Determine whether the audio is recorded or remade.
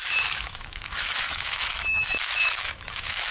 remade